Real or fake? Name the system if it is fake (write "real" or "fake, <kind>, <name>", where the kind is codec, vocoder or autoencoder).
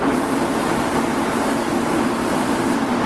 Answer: fake, vocoder, BigVGAN v2